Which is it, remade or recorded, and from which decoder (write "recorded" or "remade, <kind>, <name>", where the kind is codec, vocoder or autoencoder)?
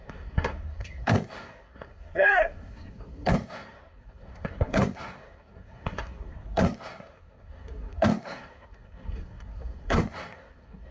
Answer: remade, codec, SNAC